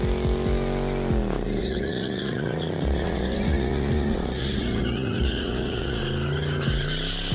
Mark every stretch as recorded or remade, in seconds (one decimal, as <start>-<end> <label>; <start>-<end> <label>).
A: 0.0-1.6 recorded; 1.6-6.0 remade; 6.0-7.3 recorded